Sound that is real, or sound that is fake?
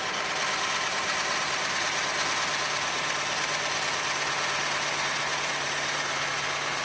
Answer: real